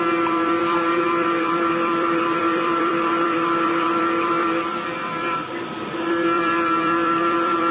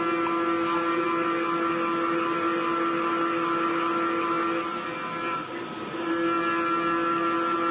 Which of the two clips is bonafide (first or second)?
second